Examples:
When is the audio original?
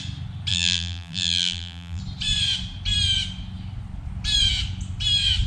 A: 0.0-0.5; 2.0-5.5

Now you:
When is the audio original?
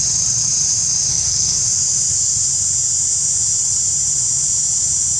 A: 0.0-1.1; 1.6-5.2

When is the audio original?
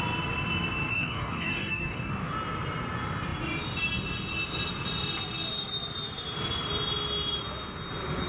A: 0.0-0.9; 2.1-8.3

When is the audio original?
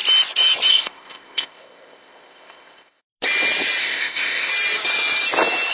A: 0.0-0.7; 3.0-3.8; 4.5-5.7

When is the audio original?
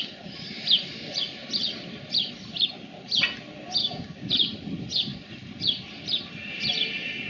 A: 0.0-3.8; 4.3-7.3